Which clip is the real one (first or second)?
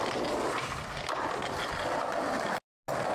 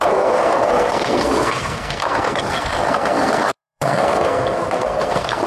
first